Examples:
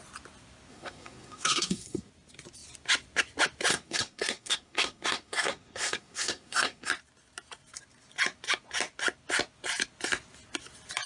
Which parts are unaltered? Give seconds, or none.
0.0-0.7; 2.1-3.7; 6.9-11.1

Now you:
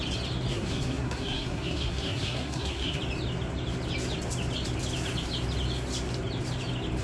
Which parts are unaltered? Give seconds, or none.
0.0-0.5; 3.0-7.0